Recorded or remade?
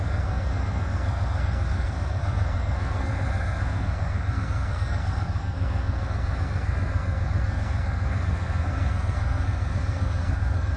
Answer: remade